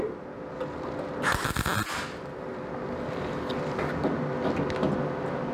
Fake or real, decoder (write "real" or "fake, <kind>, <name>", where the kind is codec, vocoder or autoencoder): real